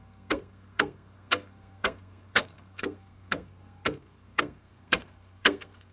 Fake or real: fake